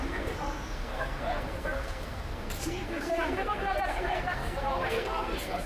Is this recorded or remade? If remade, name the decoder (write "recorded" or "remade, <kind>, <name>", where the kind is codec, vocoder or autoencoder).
remade, codec, SNAC